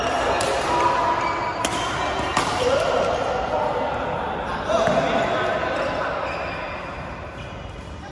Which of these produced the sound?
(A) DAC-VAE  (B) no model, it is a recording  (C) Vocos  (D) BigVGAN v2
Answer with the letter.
B